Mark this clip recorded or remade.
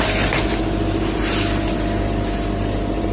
recorded